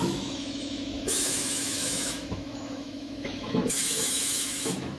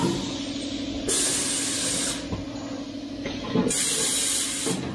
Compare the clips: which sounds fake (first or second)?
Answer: first